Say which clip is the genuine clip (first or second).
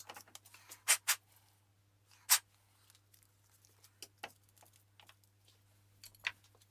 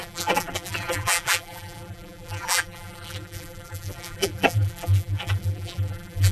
first